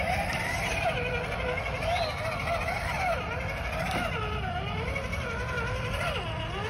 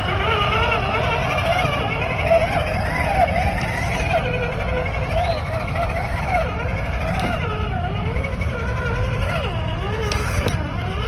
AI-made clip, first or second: second